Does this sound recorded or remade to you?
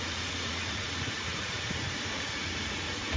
remade